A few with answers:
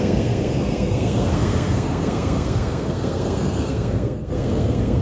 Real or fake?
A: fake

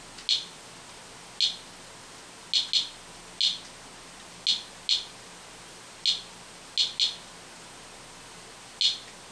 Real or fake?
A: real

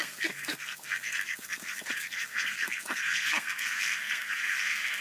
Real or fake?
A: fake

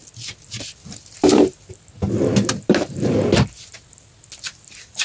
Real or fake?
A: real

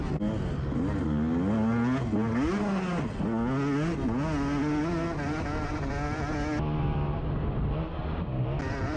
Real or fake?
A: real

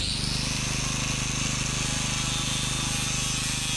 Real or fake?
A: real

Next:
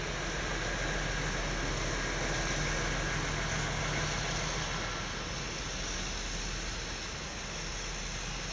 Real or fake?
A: real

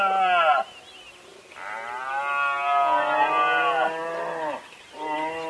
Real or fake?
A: real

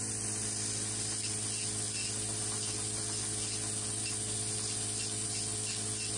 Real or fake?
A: real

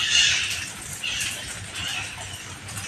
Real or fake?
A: real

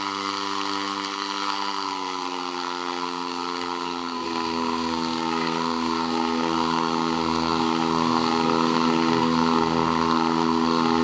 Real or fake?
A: fake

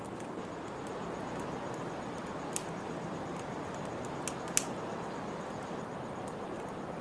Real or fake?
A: real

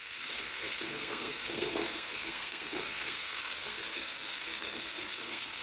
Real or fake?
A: fake